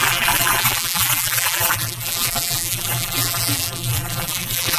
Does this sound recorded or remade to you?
remade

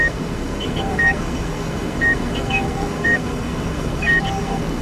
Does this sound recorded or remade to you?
remade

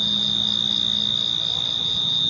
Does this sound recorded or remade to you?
recorded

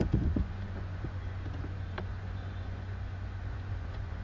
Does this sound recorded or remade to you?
remade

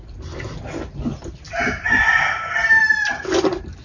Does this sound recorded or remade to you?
recorded